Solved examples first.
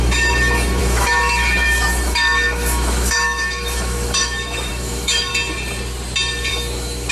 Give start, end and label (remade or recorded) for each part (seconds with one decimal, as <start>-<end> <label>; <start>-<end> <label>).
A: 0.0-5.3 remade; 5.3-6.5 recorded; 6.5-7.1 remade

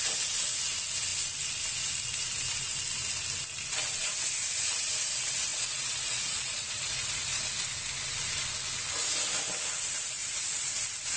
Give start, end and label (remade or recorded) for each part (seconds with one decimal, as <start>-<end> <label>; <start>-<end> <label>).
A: 0.0-5.5 recorded; 5.5-7.4 remade; 7.4-10.2 recorded; 10.2-10.7 remade; 10.7-11.2 recorded

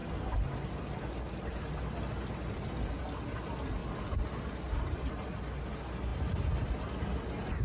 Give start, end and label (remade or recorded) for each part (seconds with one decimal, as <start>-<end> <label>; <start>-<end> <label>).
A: 0.0-7.6 recorded